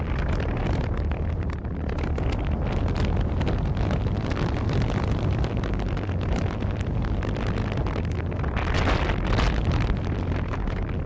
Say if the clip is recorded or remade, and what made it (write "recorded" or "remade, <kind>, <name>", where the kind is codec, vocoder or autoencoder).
recorded